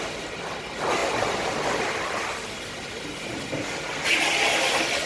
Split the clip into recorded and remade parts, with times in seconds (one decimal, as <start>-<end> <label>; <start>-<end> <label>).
0.0-5.1 recorded